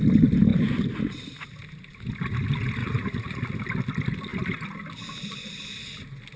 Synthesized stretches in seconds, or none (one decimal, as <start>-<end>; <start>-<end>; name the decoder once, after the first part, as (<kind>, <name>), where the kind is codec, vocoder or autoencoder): 2.8-3.4 (vocoder, Vocos)